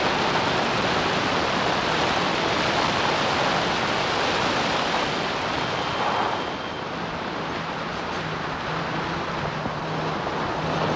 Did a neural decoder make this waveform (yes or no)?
no